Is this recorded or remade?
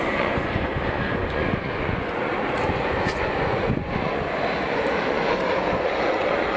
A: remade